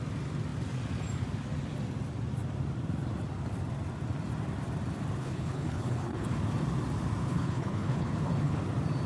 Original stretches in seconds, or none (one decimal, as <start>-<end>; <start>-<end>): 0.0-5.2; 6.4-7.2; 8.6-9.1